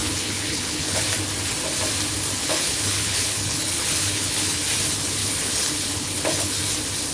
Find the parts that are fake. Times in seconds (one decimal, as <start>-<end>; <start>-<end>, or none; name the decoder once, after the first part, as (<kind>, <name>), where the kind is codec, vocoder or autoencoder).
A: 0.0-1.0 (codec, HILCodec); 2.4-4.6; 5.2-6.6